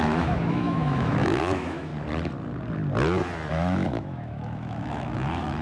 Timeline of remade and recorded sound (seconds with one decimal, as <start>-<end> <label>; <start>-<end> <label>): 0.0-1.9 remade; 1.9-3.5 recorded; 3.5-5.6 remade